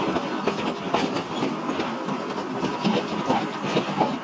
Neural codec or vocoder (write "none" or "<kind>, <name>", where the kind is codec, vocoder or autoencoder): none